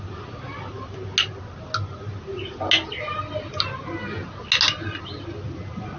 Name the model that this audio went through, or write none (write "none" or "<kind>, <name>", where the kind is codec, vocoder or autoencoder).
none